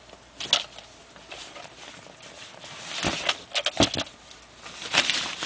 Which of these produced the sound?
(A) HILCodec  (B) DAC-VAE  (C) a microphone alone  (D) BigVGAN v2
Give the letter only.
C